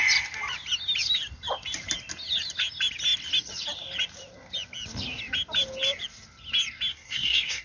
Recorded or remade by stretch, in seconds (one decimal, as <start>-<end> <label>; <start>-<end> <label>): 0.0-6.9 recorded; 6.9-7.6 remade